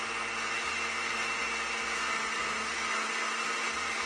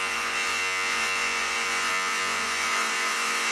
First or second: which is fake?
second